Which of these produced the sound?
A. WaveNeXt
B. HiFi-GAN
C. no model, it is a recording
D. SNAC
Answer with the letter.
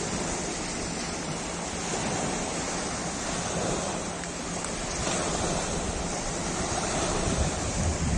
C